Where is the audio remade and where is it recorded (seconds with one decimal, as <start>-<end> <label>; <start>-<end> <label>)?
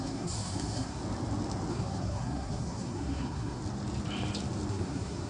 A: 0.0-1.0 remade; 1.0-1.7 recorded; 1.7-3.6 remade; 3.6-4.7 recorded; 4.7-5.3 remade